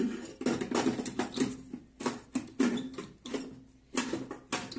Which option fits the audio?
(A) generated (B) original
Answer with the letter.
B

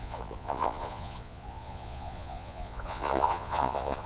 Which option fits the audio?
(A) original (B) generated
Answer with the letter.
B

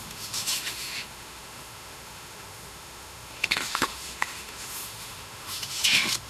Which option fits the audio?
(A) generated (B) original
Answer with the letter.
A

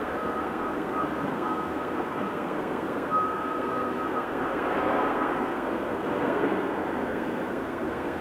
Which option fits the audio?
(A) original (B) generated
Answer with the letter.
B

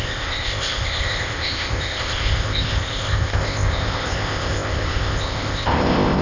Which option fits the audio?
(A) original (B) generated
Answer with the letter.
B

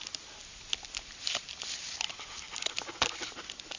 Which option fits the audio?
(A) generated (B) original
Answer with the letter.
B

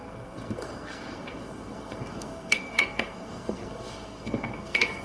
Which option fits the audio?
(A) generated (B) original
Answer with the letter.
A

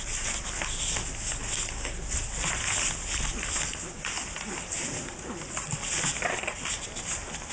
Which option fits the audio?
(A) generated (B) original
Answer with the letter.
B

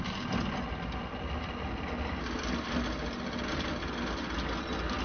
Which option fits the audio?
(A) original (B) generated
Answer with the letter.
A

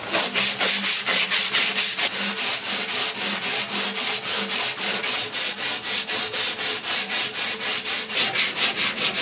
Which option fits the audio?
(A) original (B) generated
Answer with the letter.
A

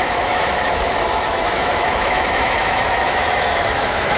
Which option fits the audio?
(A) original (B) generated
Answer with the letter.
B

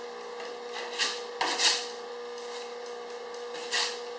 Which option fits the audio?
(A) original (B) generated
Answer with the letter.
A